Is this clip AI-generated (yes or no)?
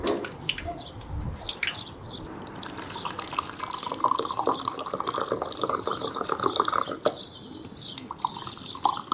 no